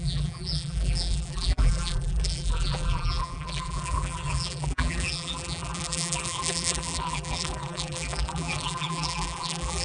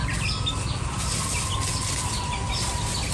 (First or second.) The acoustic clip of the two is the second